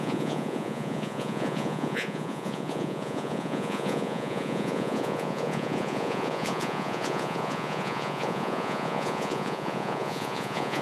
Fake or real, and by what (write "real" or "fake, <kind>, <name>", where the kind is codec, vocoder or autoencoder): fake, vocoder, Vocos